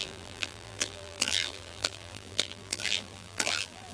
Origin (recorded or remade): remade